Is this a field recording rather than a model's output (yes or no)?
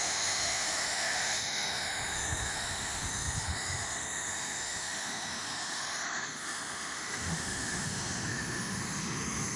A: no